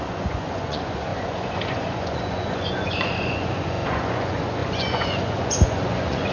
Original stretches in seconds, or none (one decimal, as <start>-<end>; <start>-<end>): none